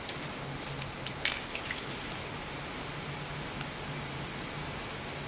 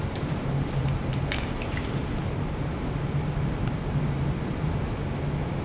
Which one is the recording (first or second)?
first